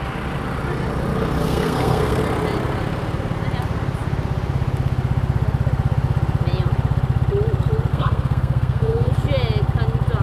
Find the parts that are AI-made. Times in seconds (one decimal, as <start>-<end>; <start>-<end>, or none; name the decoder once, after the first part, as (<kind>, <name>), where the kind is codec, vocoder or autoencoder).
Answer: 1.4-2.2 (codec, SNAC); 7.9-9.1